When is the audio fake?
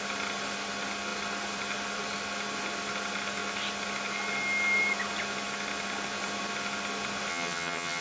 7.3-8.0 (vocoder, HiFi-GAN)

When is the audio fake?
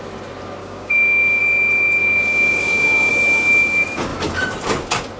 0.6-1.4 (codec, DAC); 2.0-3.1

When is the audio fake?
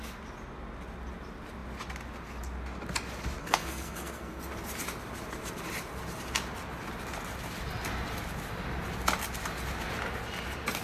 3.4-4.4 (codec, SNAC)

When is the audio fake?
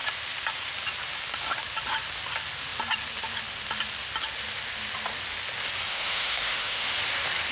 5.9-6.9 (autoencoder, DAC-VAE)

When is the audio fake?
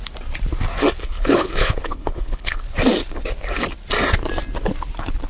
1.0-2.6 (codec, HILCodec)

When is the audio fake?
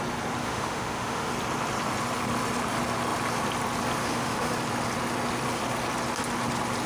0.4-1.3 (autoencoder, DAC-VAE); 4.0-4.5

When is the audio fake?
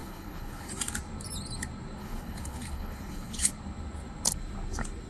0.0-0.7 (codec, HILCodec); 2.0-3.5